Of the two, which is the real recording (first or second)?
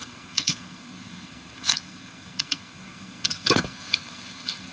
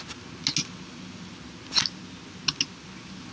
second